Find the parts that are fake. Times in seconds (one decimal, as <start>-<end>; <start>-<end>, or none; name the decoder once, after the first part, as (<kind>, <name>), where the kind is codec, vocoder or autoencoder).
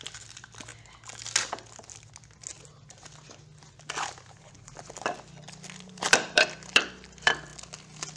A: 0.0-0.7 (vocoder, BigVGAN v2); 4.9-7.5